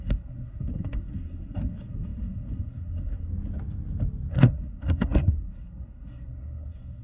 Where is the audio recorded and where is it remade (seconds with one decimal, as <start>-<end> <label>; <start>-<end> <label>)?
0.0-3.3 remade; 3.3-4.3 recorded; 4.3-7.0 remade